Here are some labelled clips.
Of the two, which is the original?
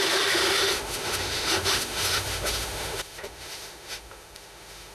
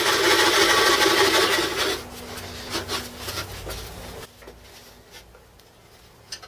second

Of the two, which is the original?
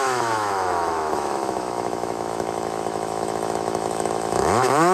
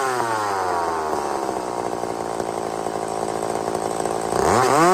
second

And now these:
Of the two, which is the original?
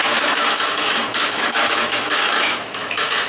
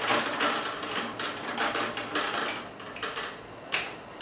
second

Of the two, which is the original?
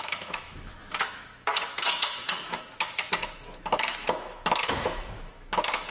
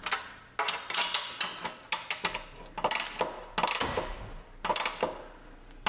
second